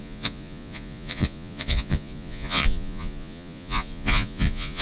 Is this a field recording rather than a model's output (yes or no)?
no